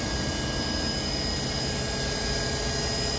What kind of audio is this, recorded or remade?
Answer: recorded